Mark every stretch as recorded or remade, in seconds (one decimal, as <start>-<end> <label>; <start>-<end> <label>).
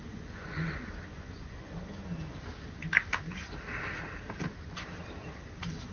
0.0-0.7 remade; 0.7-1.1 recorded; 1.1-1.7 remade; 1.7-5.9 recorded